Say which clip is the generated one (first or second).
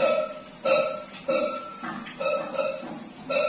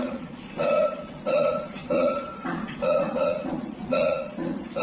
second